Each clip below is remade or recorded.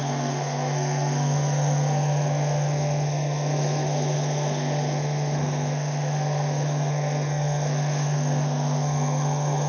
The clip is remade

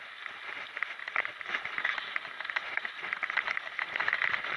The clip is recorded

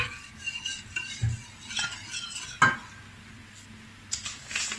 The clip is recorded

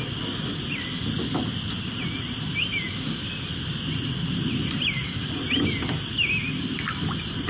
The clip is recorded